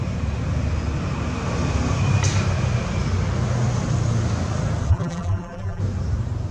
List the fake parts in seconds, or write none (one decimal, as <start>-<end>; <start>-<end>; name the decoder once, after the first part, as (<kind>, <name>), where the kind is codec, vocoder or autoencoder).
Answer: 4.9-5.8 (vocoder, BigVGAN v2)